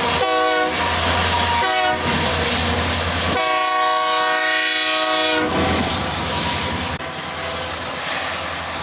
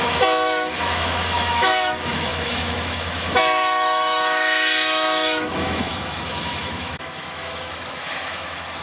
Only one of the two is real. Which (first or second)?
first